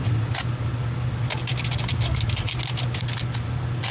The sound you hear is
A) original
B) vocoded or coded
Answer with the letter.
A